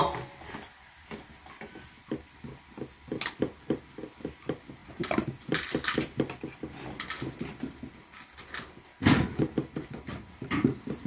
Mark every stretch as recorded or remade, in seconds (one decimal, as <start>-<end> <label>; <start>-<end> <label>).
0.0-11.1 recorded